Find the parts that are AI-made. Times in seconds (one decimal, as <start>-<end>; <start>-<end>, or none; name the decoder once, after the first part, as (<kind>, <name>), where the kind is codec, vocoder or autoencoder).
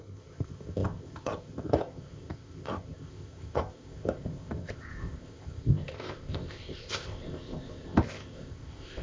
0.0-9.0 (codec, ZipCodec)